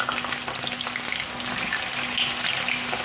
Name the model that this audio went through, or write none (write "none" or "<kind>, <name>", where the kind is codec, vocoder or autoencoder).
none